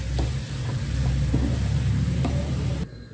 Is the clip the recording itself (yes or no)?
yes